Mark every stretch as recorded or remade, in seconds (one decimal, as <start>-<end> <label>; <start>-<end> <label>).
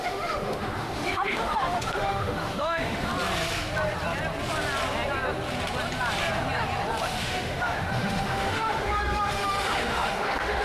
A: 0.0-3.1 remade; 3.1-7.0 recorded; 7.0-10.6 remade